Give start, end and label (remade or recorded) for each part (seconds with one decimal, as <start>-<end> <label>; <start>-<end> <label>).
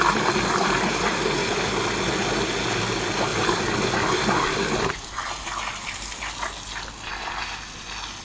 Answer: 0.0-8.2 recorded